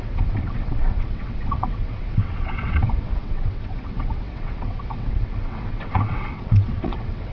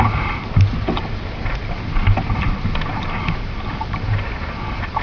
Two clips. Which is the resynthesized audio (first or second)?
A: first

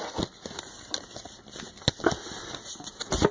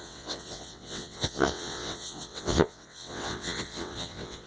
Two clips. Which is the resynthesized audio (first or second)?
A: second